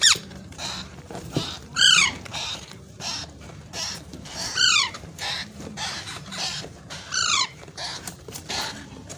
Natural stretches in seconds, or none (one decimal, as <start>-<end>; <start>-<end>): none